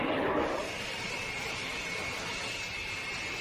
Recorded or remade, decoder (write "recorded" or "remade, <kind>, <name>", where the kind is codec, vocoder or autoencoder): recorded